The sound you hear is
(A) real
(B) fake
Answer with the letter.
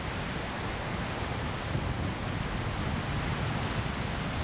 A